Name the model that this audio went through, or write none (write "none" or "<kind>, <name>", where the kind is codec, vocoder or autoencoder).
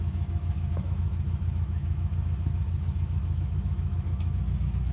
autoencoder, DAC-VAE